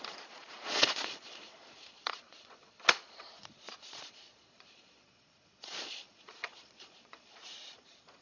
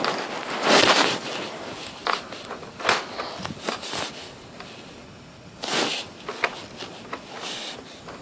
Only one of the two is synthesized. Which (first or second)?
first